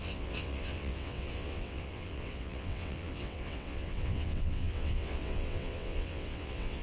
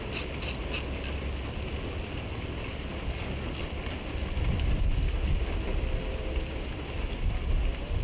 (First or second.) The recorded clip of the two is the second